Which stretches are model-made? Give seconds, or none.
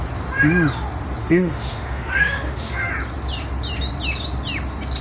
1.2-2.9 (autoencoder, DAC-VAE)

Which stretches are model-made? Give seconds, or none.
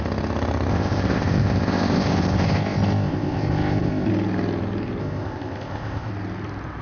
0.7-4.1 (codec, ZipCodec); 5.0-6.1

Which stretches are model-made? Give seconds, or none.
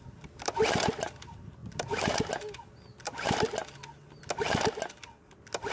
none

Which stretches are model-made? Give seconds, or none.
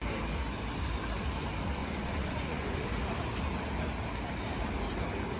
1.8-3.0 (vocoder, Vocos)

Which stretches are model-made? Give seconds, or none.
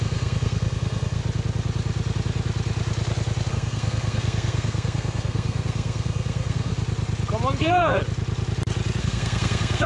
0.0-1.2 (codec, SNAC); 3.5-6.7; 7.6-8.0; 9.0-9.9